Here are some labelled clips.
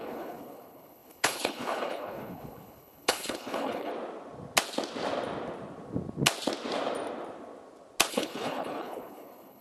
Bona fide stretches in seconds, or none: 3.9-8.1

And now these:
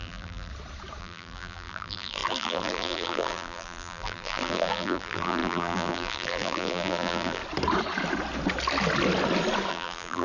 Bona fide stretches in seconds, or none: 0.5-1.0; 7.4-9.7

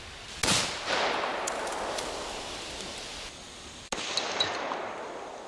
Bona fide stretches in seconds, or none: 0.0-5.5